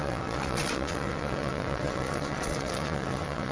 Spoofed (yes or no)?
yes